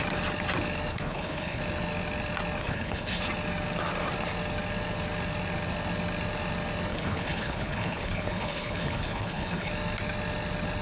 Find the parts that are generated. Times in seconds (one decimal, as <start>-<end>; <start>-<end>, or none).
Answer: 0.9-1.6; 2.6-3.2; 6.9-9.7